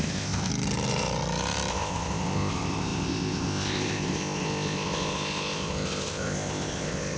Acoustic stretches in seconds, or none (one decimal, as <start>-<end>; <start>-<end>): 0.5-1.7